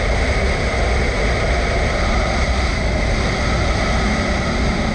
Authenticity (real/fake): real